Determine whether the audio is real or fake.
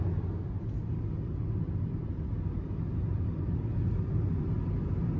real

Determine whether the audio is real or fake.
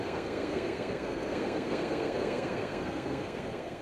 fake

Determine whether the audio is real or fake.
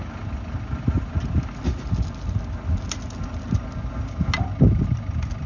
real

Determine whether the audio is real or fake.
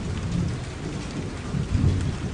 real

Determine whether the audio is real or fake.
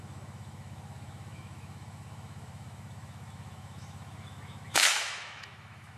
fake